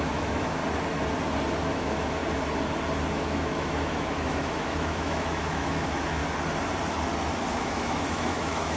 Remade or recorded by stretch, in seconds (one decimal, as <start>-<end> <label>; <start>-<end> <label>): 0.0-0.6 remade; 0.6-1.6 recorded; 1.6-2.2 remade; 2.2-3.1 recorded; 3.1-6.2 remade; 6.2-7.5 recorded; 7.5-8.8 remade